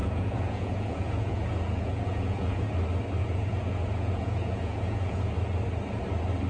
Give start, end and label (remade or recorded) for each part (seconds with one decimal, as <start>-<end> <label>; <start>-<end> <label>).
0.0-2.6 remade; 2.6-3.2 recorded; 3.2-5.3 remade; 5.3-6.5 recorded

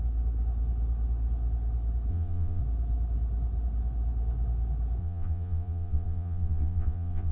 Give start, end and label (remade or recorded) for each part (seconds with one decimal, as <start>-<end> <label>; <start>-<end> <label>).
0.0-2.1 recorded; 2.1-2.6 remade; 2.6-5.0 recorded; 5.0-7.3 remade

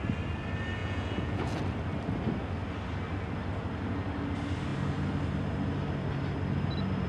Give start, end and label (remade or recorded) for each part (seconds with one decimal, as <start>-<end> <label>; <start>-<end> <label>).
0.0-0.8 recorded; 0.8-1.6 remade; 1.6-7.1 recorded

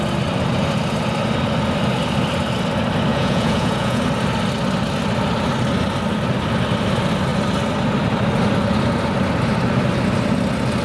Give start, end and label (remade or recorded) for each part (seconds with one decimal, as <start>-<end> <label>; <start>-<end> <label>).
0.0-3.1 recorded; 3.1-4.0 remade; 4.0-10.8 recorded

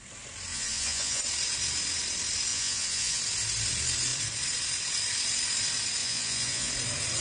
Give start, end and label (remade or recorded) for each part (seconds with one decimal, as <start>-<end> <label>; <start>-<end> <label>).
0.0-0.5 recorded; 0.5-1.2 remade; 1.2-2.5 recorded; 2.5-3.2 remade; 3.2-6.0 recorded; 6.0-6.7 remade; 6.7-7.2 recorded

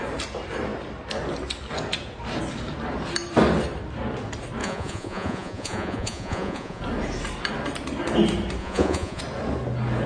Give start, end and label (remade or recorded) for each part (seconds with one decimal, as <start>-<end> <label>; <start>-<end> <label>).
0.0-4.6 recorded; 4.6-6.8 remade; 6.8-8.6 recorded; 8.6-9.2 remade; 9.2-10.1 recorded

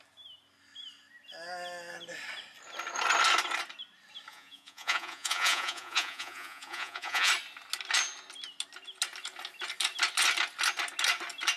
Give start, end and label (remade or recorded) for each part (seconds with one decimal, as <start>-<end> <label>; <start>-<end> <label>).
0.0-4.3 recorded; 4.3-7.3 remade; 7.3-11.6 recorded